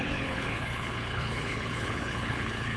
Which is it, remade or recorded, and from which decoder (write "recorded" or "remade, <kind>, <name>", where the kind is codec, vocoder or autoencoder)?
remade, codec, HILCodec